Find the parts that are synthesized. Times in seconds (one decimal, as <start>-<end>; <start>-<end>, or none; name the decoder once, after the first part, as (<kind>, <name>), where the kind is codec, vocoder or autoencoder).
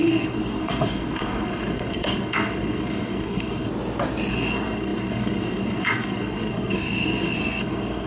0.0-3.7 (codec, SNAC); 4.3-8.1